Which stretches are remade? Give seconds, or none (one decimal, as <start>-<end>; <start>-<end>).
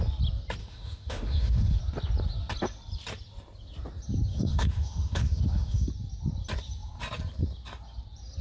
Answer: 0.6-1.8; 4.3-5.9